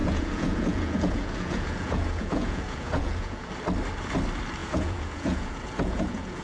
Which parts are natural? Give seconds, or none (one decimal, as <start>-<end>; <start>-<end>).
3.5-4.6